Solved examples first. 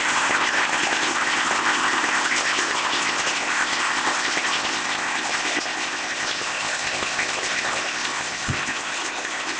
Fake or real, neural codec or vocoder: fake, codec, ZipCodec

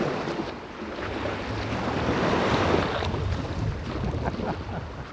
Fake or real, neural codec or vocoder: real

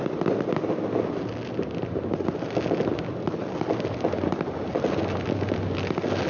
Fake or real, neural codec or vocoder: real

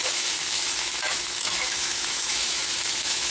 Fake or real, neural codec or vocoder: fake, autoencoder, DAC-VAE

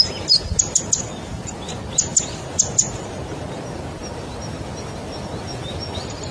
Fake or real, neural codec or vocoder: real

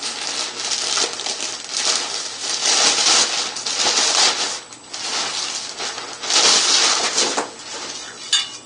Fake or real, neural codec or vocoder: real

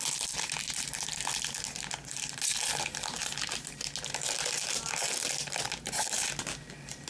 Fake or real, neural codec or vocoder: real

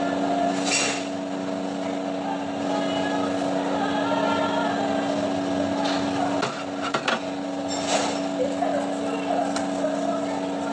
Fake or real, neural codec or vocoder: real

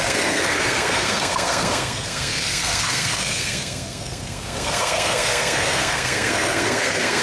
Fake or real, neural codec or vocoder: fake, codec, SNAC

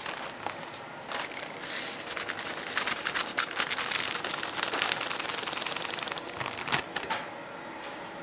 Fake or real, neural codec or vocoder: real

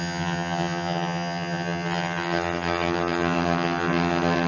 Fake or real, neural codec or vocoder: fake, vocoder, HiFi-GAN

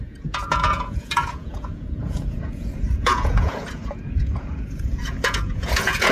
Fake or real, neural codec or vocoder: fake, vocoder, Vocos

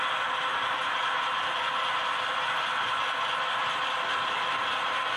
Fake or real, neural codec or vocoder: real